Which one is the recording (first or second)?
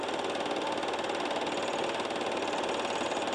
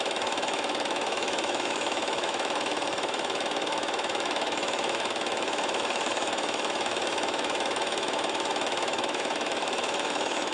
first